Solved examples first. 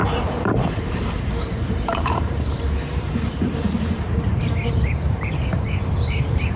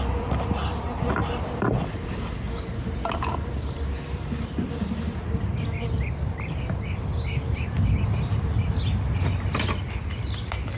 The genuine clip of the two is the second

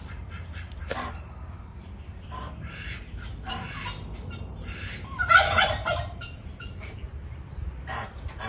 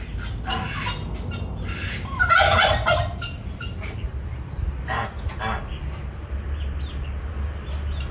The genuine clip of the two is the second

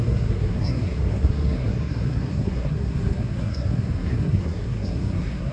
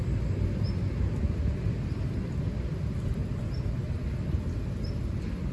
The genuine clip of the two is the second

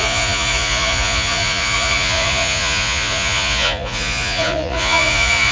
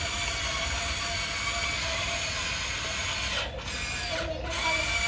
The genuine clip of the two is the second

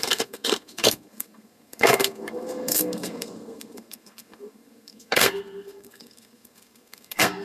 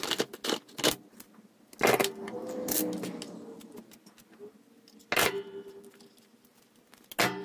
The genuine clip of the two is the second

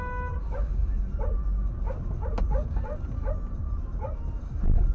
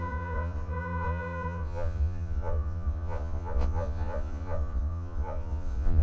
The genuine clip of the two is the first